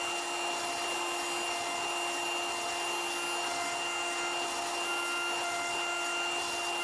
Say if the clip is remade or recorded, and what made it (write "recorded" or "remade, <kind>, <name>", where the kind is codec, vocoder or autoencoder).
recorded